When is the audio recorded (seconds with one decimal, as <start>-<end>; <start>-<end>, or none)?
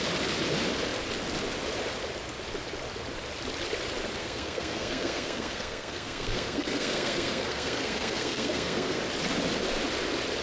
0.0-4.2; 9.0-10.4